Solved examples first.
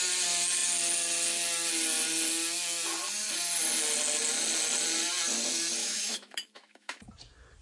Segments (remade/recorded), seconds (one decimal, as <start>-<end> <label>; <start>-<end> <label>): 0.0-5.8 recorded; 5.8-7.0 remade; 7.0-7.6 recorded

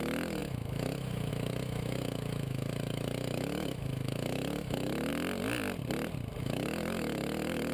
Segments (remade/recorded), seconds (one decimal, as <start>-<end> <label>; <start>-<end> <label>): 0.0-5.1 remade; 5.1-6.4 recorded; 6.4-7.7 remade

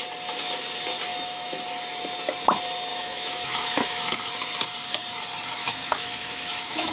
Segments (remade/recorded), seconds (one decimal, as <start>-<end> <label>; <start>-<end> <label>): 0.0-1.1 recorded; 1.1-1.6 remade; 1.6-2.9 recorded; 2.9-4.3 remade; 4.3-5.6 recorded; 5.6-6.9 remade

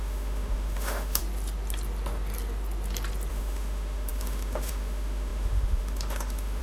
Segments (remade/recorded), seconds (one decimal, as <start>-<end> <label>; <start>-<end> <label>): 0.0-1.2 remade; 1.2-3.3 recorded; 3.3-6.6 remade

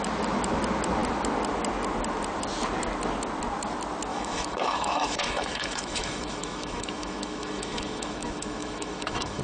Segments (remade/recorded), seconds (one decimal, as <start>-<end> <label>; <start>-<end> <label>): 0.0-4.1 recorded; 4.1-9.4 remade